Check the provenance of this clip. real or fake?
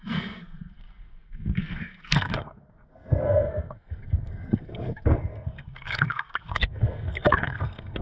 fake